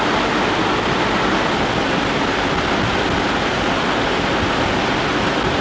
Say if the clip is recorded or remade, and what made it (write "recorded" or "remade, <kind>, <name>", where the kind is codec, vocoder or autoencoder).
recorded